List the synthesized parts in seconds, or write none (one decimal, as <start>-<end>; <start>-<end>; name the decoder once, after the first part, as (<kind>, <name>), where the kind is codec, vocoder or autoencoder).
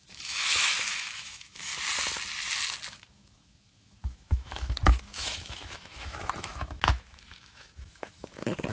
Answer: 0.0-1.7 (autoencoder, DAC-VAE); 2.9-8.7